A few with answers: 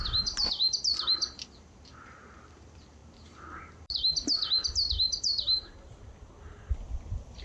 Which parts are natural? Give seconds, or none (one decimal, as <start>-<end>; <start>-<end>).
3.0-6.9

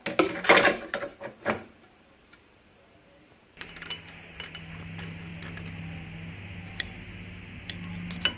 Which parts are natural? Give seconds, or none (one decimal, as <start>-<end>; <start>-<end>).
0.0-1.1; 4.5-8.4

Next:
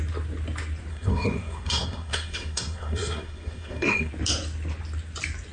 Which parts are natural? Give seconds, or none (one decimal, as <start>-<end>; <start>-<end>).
0.0-0.9; 4.1-5.5